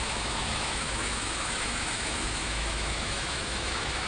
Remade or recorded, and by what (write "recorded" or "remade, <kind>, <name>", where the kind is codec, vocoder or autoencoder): remade, autoencoder, DAC-VAE